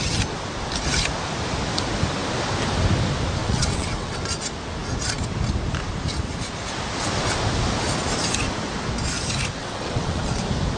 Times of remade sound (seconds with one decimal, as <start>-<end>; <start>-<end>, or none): 3.4-4.2; 9.6-10.4